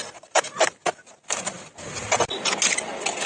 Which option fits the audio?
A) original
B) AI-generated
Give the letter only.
A